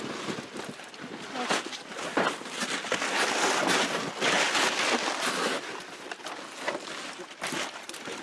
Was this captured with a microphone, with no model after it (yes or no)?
yes